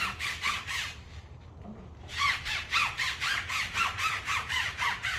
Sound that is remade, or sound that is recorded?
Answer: remade